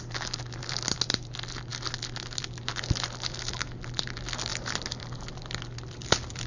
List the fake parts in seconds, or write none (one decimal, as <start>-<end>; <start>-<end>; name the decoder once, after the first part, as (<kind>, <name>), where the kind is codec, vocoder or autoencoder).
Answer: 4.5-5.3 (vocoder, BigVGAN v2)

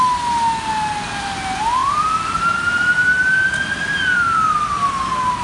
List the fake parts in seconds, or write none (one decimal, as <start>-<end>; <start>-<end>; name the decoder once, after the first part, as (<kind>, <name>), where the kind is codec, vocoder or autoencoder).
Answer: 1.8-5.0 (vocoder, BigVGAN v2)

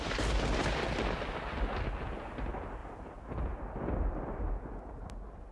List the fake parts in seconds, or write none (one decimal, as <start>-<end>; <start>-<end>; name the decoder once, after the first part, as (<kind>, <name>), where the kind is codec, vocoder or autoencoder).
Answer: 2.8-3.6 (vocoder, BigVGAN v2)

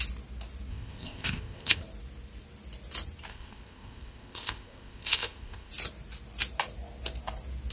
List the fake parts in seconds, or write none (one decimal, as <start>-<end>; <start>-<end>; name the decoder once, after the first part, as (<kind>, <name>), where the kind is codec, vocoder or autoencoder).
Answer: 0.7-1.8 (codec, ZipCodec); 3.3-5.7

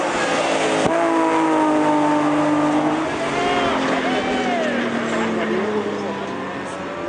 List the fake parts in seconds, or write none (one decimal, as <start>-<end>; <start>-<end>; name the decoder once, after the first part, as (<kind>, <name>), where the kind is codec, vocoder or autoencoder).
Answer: none